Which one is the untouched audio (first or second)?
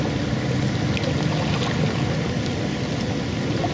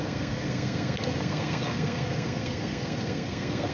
first